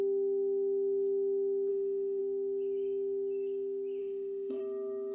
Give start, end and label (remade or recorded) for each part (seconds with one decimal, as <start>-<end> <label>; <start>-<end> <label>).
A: 0.0-1.7 recorded; 1.7-2.2 remade; 2.2-4.0 recorded; 4.0-4.6 remade; 4.6-5.1 recorded